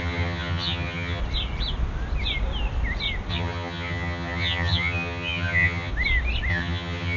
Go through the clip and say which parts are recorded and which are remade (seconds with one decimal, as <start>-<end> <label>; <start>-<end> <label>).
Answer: 0.0-1.2 remade; 1.2-3.3 recorded; 3.3-5.9 remade; 5.9-6.5 recorded; 6.5-7.2 remade